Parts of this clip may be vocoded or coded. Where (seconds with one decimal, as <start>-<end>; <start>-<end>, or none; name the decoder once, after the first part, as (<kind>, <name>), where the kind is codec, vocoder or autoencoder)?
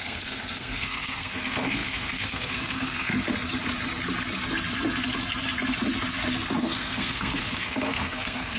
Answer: 0.0-3.1 (codec, SNAC); 6.6-8.6